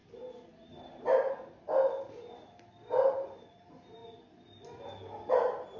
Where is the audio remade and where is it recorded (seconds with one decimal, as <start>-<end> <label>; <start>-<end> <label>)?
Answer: 0.0-5.8 recorded